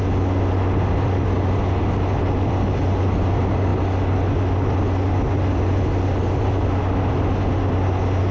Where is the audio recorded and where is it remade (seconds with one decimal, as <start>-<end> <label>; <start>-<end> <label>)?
0.0-8.3 recorded